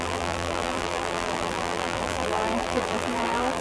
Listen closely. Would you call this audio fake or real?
fake